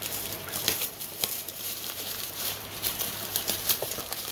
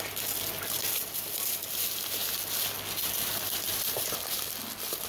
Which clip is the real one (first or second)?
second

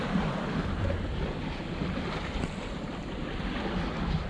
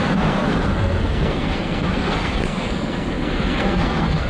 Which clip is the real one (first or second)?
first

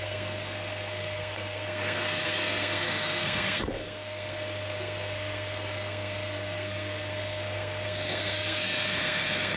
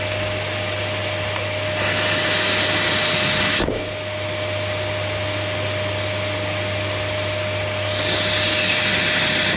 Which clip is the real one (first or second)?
second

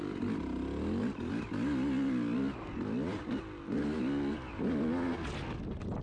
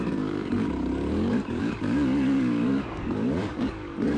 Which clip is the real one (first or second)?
first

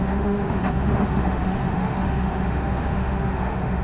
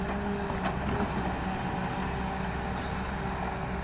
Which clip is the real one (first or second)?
second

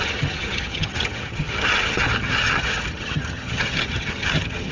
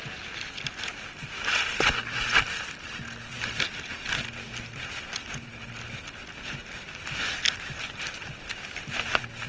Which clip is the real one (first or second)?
second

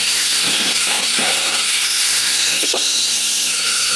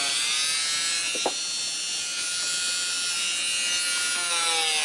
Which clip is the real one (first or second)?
second